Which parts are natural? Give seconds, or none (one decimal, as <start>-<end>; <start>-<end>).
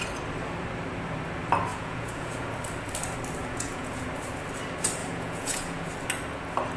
0.0-1.7; 2.5-3.4; 4.1-5.0; 5.9-6.8